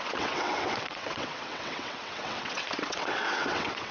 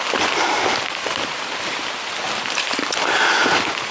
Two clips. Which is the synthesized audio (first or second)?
first